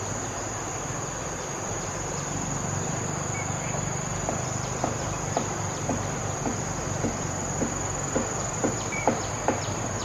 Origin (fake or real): real